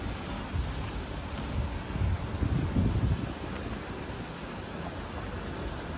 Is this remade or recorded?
recorded